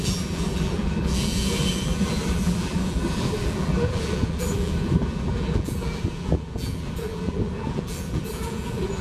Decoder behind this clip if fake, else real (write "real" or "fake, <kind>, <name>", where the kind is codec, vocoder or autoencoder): fake, vocoder, BigVGAN v2